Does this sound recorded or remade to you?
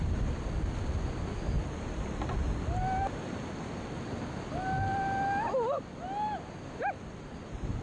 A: recorded